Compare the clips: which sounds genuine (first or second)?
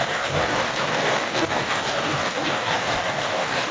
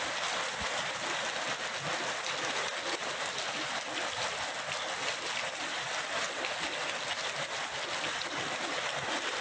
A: second